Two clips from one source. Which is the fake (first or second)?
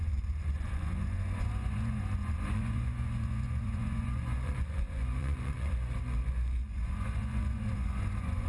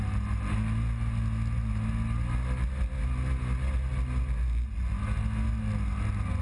first